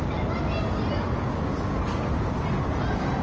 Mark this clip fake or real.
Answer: real